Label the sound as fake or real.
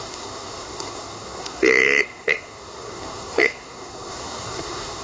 fake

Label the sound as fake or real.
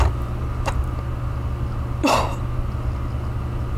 real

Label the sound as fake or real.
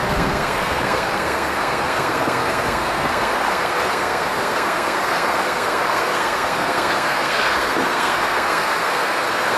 fake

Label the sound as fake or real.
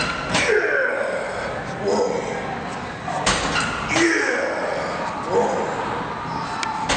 real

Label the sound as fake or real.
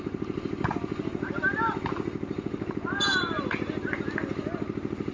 real